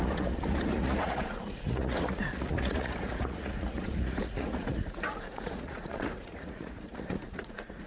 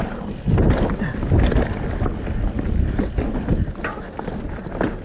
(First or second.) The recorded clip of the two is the second